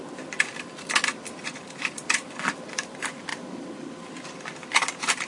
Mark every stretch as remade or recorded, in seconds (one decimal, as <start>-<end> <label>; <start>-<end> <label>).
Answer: 0.0-1.5 recorded; 1.5-2.3 remade; 2.3-3.3 recorded; 3.3-4.1 remade; 4.1-5.3 recorded